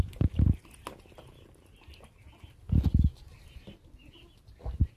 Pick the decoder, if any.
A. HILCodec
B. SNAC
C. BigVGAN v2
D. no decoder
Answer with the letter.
D